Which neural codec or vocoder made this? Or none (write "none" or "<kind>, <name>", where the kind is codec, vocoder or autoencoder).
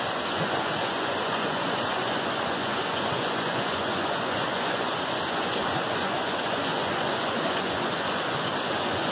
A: vocoder, Vocos